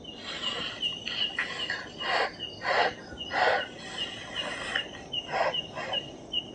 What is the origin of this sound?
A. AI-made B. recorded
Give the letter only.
B